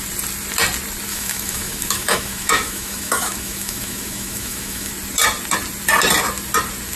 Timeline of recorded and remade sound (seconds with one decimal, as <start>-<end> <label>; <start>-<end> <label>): 0.0-1.1 recorded; 1.1-4.9 remade; 4.9-7.0 recorded

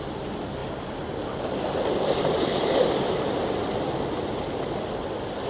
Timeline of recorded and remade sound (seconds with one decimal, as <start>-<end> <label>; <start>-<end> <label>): 0.0-5.5 recorded

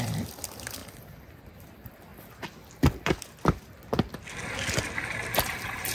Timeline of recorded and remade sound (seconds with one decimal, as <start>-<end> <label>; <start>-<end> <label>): 0.0-2.1 remade; 2.1-5.4 recorded; 5.4-5.9 remade

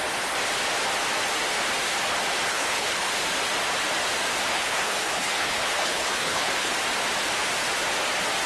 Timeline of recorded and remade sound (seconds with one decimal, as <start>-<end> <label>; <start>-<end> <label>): 0.0-2.5 recorded; 2.5-3.1 remade; 3.1-4.5 recorded; 4.5-6.7 remade; 6.7-8.5 recorded

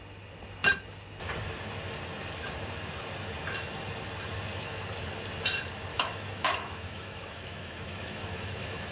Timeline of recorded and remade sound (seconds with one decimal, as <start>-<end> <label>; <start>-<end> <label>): 0.0-5.9 recorded; 5.9-8.9 remade